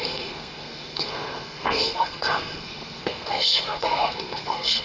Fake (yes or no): yes